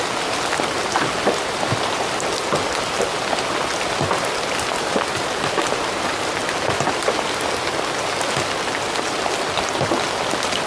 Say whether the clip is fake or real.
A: real